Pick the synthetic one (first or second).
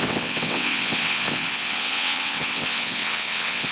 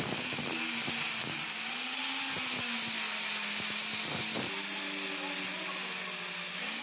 first